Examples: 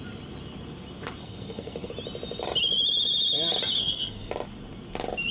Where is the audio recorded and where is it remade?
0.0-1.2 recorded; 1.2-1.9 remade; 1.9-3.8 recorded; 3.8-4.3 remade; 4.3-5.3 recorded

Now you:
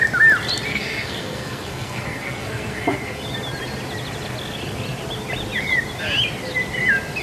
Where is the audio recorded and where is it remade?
0.0-0.7 recorded; 0.7-3.2 remade; 3.2-7.2 recorded

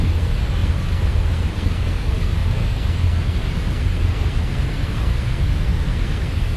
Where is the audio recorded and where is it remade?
0.0-6.6 remade

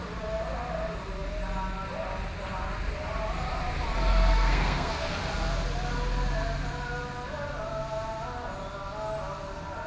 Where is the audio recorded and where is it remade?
0.0-4.1 recorded; 4.1-5.1 remade; 5.1-9.9 recorded

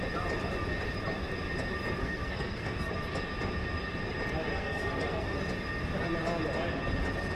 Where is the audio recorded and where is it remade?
0.0-2.0 recorded; 2.0-2.9 remade; 2.9-4.5 recorded; 4.5-5.4 remade; 5.4-7.4 recorded

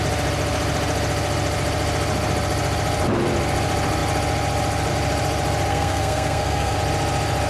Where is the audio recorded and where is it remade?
0.0-5.7 recorded; 5.7-6.8 remade; 6.8-7.5 recorded

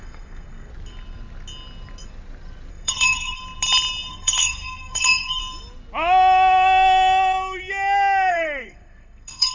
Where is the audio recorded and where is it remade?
0.0-0.7 remade; 0.7-2.7 recorded; 2.7-3.4 remade; 3.4-4.1 recorded; 4.1-5.4 remade; 5.4-8.3 recorded; 8.3-9.5 remade

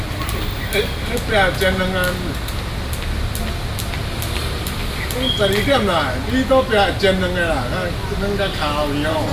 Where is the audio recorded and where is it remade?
0.0-9.3 recorded